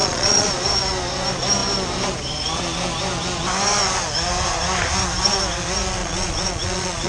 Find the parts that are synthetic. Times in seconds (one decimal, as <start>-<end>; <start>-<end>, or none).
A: 0.0-0.5; 6.0-7.1